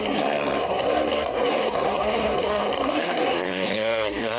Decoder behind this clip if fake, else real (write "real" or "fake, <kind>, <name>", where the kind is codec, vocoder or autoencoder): fake, codec, SNAC